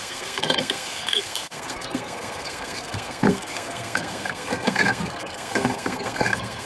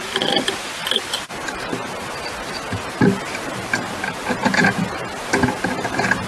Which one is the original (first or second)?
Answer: second